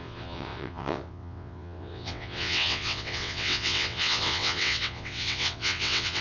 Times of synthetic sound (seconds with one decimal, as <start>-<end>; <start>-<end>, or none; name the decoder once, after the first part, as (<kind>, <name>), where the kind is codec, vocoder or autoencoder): 0.0-6.2 (vocoder, WaveNeXt)